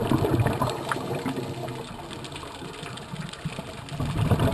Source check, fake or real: real